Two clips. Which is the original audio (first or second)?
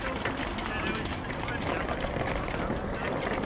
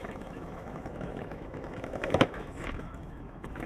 first